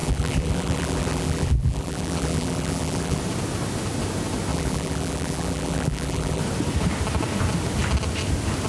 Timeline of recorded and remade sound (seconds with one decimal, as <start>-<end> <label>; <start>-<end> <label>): 0.0-3.2 remade; 3.2-4.5 recorded; 4.5-6.4 remade; 6.4-8.7 recorded